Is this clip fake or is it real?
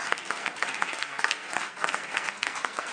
fake